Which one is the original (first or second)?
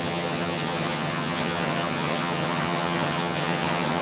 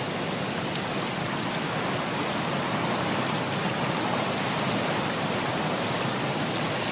second